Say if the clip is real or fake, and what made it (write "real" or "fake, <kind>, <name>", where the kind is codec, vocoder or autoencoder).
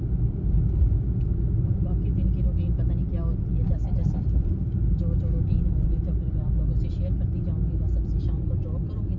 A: real